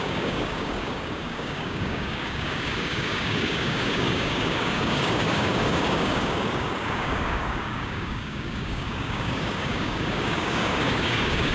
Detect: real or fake fake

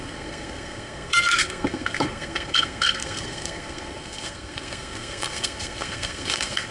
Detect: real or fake fake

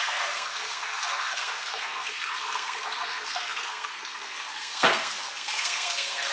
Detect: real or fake fake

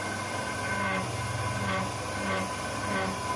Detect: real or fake real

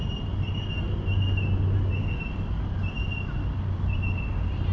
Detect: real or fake real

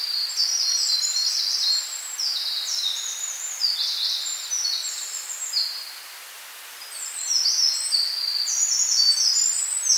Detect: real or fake real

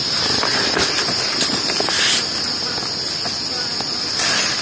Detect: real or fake real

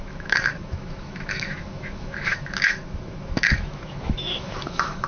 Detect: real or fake fake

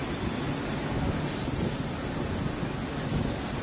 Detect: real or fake real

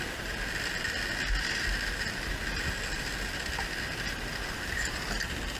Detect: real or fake real